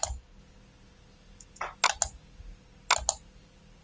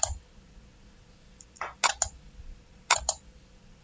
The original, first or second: first